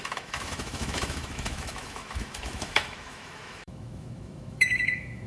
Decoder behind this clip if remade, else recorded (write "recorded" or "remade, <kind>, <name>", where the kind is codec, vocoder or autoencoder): remade, autoencoder, DAC-VAE